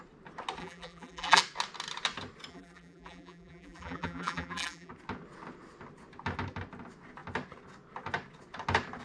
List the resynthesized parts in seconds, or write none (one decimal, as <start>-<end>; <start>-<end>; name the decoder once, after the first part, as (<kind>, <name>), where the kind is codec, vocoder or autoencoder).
0.6-1.4 (vocoder, BigVGAN v2); 2.5-4.9